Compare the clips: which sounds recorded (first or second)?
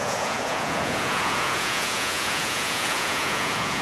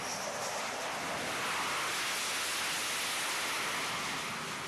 second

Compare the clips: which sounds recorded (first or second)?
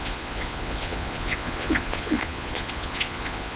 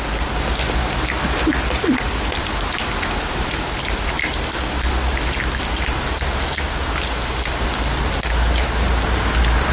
second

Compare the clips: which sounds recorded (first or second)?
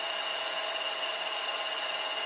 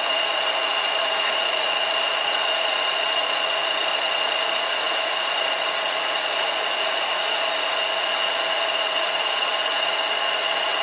first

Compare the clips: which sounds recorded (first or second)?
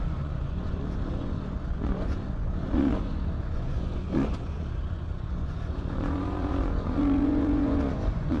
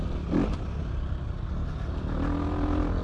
second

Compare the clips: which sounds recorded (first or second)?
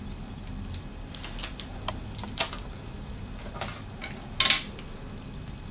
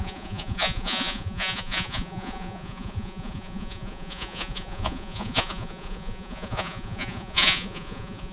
first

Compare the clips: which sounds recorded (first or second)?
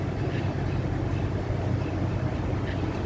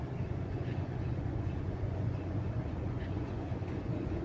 first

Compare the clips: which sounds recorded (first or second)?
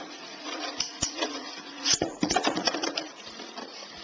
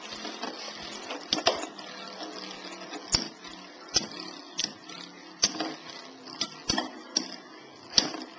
second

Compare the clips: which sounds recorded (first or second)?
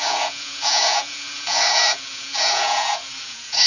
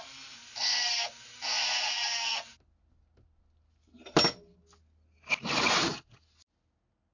second